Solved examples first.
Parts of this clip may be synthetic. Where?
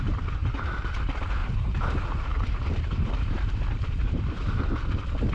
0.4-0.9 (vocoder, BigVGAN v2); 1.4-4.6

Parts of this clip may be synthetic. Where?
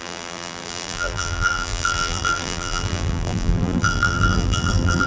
0.0-5.1 (vocoder, BigVGAN v2)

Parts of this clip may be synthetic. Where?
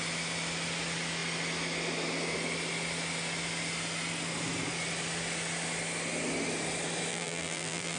7.1-8.0 (vocoder, BigVGAN v2)